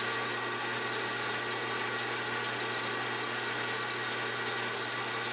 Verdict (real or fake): real